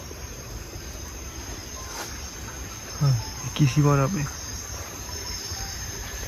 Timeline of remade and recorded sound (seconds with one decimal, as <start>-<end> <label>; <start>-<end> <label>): 0.0-1.6 remade; 1.6-4.7 recorded; 4.7-6.3 remade